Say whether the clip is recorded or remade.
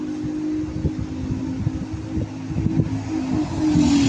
recorded